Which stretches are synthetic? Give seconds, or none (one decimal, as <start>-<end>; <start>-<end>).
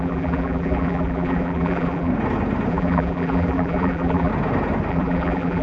0.0-2.1; 2.7-4.3; 4.9-5.6